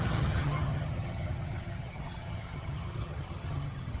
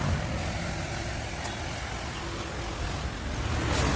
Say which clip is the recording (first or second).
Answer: second